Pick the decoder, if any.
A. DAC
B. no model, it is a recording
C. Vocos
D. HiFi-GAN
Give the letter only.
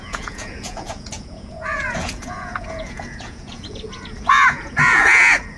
C